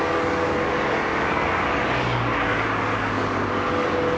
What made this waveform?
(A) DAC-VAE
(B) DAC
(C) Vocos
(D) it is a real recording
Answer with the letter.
B